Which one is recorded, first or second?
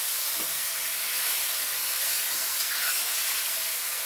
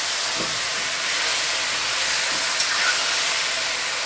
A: second